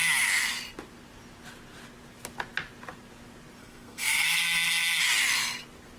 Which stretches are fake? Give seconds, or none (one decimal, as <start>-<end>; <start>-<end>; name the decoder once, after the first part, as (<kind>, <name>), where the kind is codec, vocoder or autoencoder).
3.6-4.4 (codec, SNAC)